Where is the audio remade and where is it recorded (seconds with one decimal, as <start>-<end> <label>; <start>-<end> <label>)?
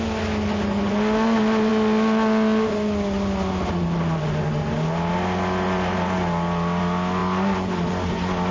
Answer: 0.0-8.5 recorded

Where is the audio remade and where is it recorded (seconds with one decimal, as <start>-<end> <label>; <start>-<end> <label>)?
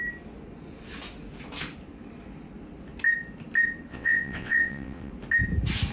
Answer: 0.0-3.9 recorded; 3.9-5.1 remade; 5.1-5.9 recorded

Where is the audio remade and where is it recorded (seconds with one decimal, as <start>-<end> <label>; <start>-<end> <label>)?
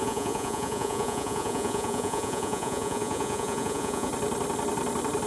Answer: 0.0-4.1 remade; 4.1-5.3 recorded